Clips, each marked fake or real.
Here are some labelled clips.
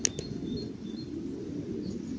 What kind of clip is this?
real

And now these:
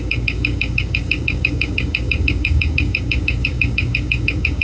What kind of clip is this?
fake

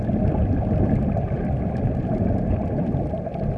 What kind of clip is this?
real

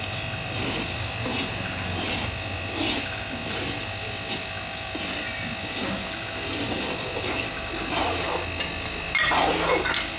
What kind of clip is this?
real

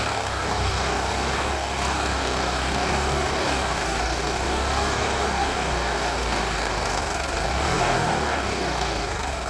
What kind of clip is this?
fake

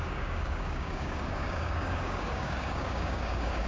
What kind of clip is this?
fake